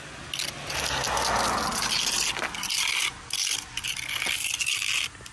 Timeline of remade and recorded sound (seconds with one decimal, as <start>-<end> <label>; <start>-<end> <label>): 0.0-5.3 recorded